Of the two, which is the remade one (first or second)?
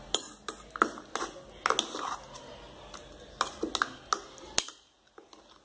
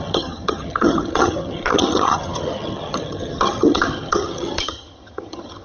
second